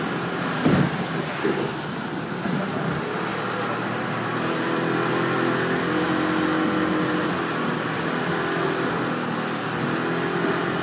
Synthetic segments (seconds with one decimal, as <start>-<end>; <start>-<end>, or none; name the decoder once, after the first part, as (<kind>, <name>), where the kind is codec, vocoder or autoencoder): 3.3-5.1 (vocoder, BigVGAN v2)